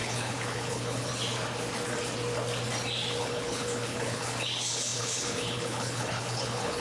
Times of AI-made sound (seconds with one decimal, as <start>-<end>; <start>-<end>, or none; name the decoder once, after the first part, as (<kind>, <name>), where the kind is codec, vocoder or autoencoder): 0.0-1.1 (codec, HILCodec); 3.2-6.8